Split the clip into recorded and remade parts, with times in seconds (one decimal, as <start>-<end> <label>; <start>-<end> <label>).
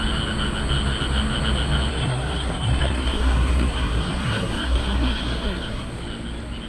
0.0-1.9 recorded; 1.9-5.9 remade; 5.9-6.7 recorded